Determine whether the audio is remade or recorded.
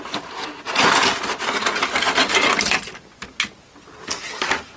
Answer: recorded